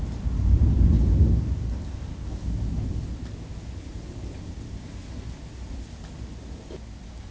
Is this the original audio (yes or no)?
yes